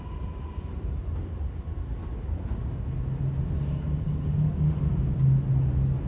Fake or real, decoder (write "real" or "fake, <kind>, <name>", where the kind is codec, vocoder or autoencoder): real